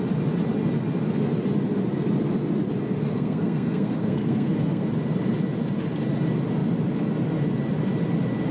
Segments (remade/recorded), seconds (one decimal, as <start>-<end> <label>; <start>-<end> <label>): 0.0-3.1 recorded; 3.1-4.9 remade; 4.9-8.5 recorded